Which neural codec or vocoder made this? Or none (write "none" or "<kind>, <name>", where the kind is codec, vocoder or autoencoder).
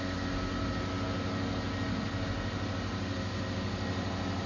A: none